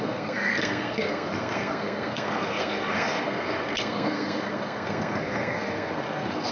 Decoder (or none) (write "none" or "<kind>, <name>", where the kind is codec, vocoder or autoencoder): codec, SNAC